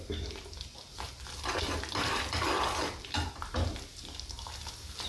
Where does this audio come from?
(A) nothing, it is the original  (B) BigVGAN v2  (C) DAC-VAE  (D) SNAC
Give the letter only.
A